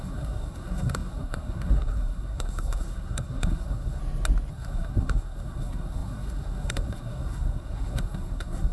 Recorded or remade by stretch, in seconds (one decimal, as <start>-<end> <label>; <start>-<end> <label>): 0.0-4.0 remade; 4.0-4.5 recorded; 4.5-8.7 remade